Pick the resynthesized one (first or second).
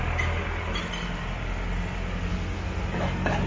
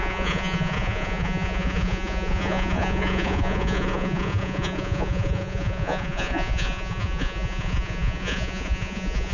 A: second